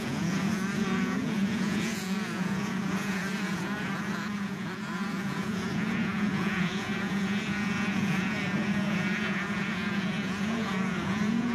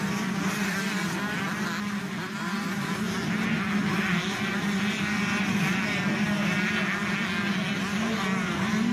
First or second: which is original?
second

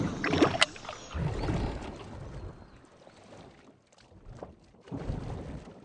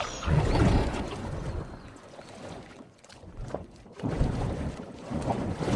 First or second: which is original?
first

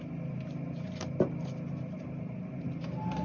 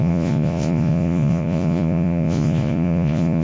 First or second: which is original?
first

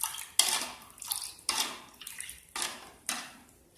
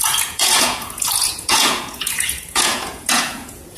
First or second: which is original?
first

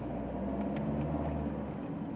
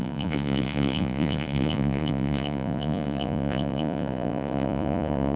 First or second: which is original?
first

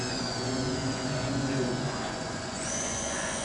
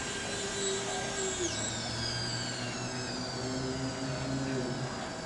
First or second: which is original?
second